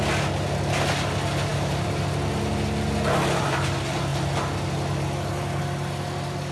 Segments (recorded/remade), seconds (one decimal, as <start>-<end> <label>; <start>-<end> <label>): 0.0-6.5 recorded